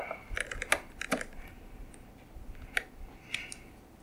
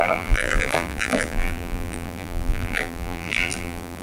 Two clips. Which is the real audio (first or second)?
first